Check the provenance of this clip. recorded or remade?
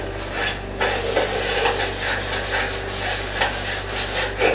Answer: recorded